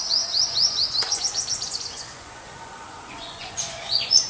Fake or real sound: fake